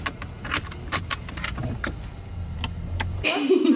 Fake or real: real